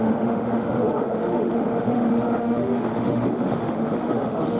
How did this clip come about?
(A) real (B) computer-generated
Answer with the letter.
B